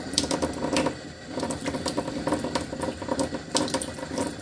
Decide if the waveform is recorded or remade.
remade